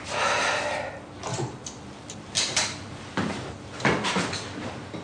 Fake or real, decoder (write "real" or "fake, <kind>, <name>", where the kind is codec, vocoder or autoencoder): real